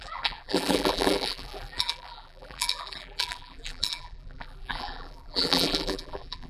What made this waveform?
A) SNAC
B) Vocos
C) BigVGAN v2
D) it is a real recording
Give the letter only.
C